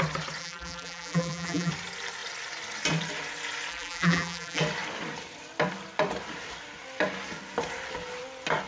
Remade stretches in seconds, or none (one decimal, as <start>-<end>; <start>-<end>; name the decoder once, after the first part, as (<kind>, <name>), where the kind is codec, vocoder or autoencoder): 0.4-1.7 (vocoder, BigVGAN v2); 3.7-4.6